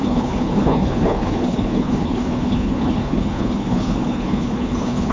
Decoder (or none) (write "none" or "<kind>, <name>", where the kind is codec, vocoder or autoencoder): codec, HILCodec